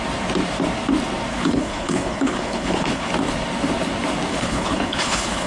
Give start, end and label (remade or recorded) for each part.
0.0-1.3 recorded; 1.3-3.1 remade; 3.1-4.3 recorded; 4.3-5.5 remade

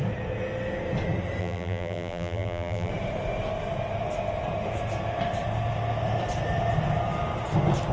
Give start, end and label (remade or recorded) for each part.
0.0-1.4 recorded; 1.4-2.9 remade; 2.9-7.9 recorded